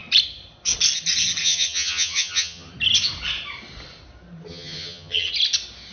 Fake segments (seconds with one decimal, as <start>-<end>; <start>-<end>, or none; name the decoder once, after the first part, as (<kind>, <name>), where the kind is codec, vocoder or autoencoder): 1.4-2.7 (vocoder, HiFi-GAN); 4.5-5.3